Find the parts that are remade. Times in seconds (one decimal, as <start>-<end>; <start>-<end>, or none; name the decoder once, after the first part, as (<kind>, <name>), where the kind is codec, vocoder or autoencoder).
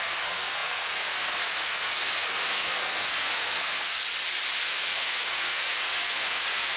0.0-4.0 (codec, SNAC); 4.6-6.8